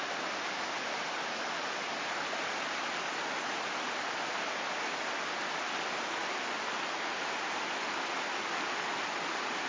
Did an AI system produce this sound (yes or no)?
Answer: no